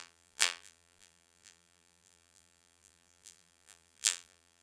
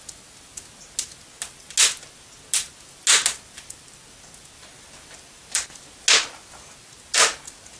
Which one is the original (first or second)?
second